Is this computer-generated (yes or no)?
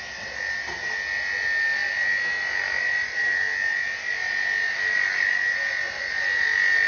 no